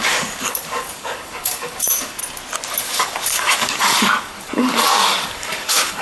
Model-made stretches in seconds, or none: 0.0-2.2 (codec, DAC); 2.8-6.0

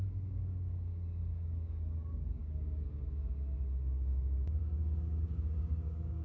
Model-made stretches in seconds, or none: 0.0-6.2 (codec, DAC)